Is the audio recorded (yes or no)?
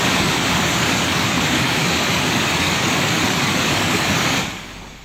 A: no